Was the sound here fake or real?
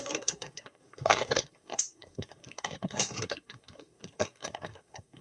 fake